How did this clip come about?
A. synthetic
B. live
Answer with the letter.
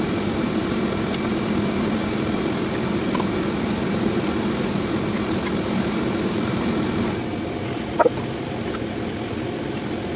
B